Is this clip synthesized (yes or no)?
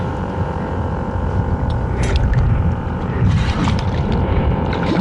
yes